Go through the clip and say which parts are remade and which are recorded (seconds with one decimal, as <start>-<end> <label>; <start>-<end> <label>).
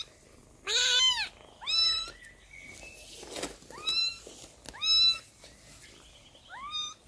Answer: 0.0-7.1 recorded